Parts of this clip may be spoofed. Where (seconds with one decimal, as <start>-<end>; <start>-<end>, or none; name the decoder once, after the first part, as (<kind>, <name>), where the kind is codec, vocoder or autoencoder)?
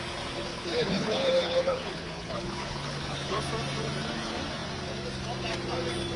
0.5-3.4 (codec, HILCodec)